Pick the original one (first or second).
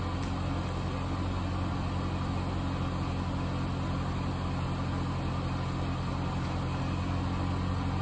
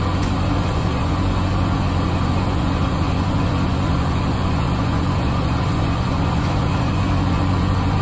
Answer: first